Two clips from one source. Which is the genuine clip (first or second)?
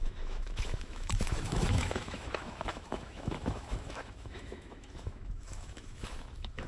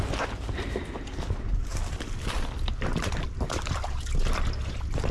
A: second